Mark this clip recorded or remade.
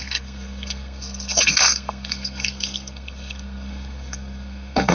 remade